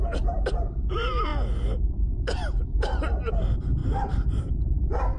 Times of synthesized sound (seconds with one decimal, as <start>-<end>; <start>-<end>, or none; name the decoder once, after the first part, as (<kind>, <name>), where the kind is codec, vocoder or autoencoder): 0.0-1.3 (vocoder, BigVGAN v2); 1.8-5.2